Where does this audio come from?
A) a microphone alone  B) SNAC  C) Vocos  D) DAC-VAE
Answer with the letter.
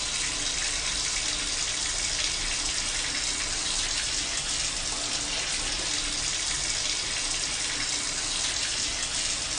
A